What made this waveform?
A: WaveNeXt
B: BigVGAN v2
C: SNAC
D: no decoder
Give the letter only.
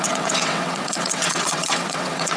A